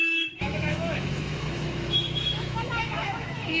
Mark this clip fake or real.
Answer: fake